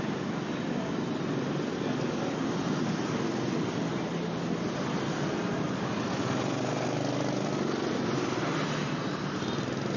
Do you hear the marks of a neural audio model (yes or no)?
no